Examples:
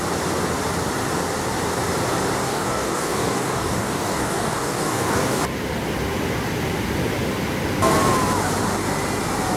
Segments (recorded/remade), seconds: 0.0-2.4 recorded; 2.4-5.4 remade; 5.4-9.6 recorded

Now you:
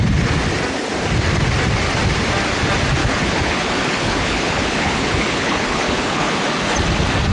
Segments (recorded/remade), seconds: 0.0-3.0 recorded; 3.0-6.4 remade; 6.4-7.3 recorded

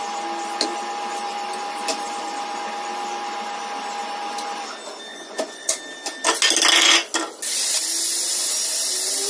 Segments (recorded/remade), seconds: 0.0-5.1 recorded; 5.1-5.7 remade; 5.7-9.3 recorded